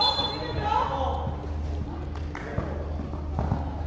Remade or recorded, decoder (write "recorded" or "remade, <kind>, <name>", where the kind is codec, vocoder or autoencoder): recorded